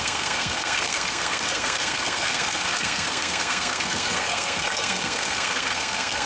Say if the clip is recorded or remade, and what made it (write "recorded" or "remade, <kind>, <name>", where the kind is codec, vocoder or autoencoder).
remade, codec, SNAC